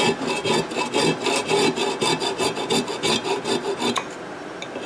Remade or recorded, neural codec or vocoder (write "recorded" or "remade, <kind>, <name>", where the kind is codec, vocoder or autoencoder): recorded